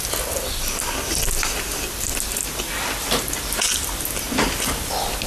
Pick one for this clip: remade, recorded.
recorded